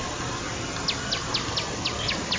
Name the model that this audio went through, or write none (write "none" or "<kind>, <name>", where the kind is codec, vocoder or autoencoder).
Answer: none